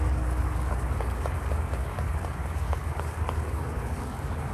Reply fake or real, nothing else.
fake